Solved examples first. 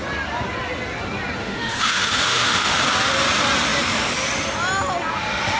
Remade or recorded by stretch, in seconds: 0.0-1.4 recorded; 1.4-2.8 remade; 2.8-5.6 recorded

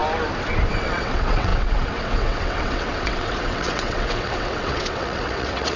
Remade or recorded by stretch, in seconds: 0.0-0.8 recorded; 0.8-5.8 remade

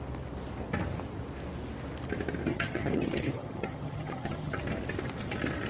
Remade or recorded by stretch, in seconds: 0.0-2.5 recorded; 2.5-4.6 remade; 4.6-5.7 recorded

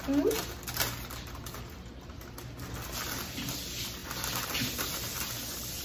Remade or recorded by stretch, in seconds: 0.0-5.8 recorded

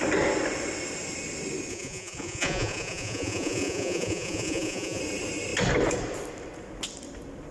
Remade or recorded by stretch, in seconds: 0.0-1.7 recorded; 1.7-5.0 remade; 5.0-7.5 recorded

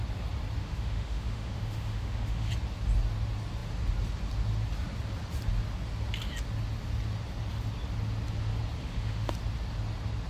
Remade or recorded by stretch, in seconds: 0.0-0.6 recorded; 0.6-2.5 remade; 2.5-8.8 recorded; 8.8-9.3 remade; 9.3-10.3 recorded